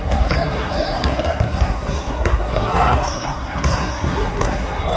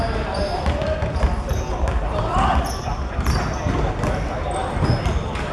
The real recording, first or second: second